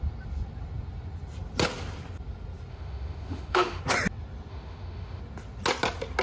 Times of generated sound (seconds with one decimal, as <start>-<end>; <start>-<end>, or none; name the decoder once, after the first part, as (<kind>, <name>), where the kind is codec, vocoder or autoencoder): 2.7-3.8 (autoencoder, DAC-VAE); 4.5-5.2